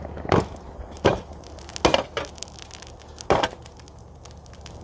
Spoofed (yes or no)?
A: no